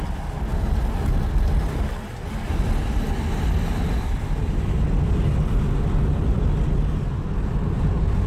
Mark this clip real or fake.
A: real